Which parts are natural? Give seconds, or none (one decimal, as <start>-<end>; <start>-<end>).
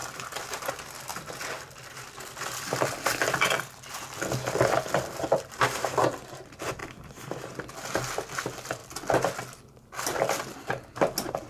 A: 0.0-1.1; 2.4-6.8; 7.5-11.5